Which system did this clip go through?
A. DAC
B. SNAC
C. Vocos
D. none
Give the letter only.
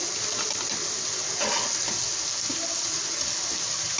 D